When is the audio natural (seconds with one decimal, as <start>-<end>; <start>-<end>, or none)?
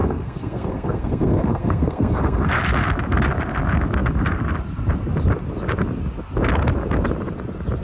2.6-7.8